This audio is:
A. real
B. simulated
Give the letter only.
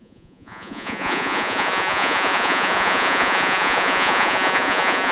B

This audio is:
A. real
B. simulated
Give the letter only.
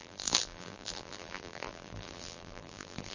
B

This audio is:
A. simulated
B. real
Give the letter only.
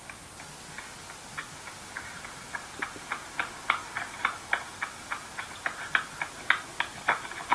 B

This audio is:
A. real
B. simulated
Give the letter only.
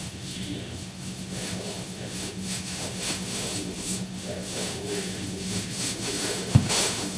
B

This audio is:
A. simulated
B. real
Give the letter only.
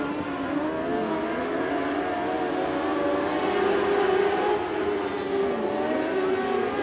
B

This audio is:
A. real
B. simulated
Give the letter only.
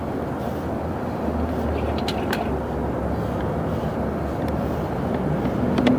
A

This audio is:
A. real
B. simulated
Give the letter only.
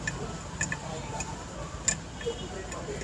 A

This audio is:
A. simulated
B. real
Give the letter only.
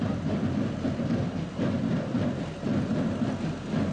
B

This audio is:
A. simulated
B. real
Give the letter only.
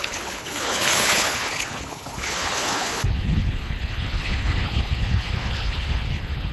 A